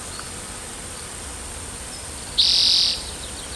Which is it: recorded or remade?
recorded